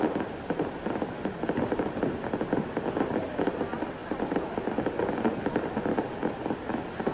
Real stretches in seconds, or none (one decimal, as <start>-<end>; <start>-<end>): 0.0-7.1